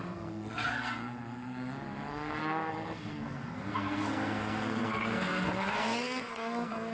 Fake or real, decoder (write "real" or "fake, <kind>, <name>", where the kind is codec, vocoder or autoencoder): fake, codec, SNAC